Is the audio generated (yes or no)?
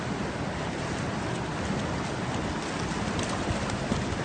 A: no